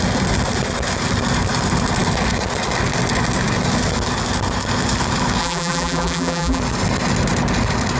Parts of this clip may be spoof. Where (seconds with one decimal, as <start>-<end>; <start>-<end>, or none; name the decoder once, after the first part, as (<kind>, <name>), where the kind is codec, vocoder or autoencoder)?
5.4-6.6 (vocoder, BigVGAN v2)